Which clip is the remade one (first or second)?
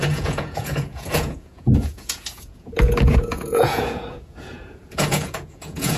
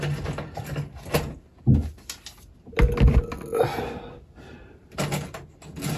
first